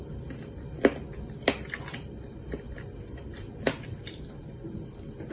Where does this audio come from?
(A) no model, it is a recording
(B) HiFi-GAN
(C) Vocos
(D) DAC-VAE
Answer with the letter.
A